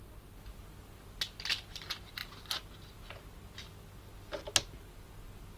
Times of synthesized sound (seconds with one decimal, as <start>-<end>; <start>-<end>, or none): none